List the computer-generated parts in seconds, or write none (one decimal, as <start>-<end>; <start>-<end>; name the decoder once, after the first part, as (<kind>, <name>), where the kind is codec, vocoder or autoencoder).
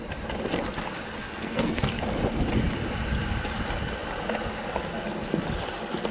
1.2-2.0 (codec, SNAC)